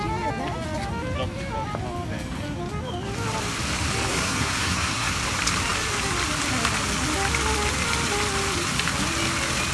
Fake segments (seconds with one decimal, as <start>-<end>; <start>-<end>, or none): 4.1-5.1